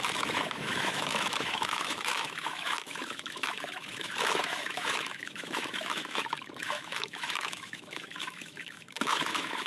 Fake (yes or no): yes